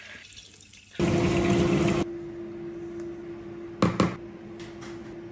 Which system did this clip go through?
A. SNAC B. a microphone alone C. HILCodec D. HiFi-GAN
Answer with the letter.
B